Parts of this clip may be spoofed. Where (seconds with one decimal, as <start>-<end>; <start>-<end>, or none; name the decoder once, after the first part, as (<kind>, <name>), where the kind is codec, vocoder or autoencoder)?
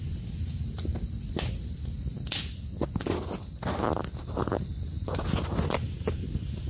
none